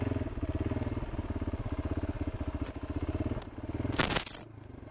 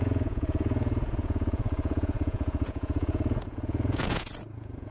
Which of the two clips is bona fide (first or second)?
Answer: first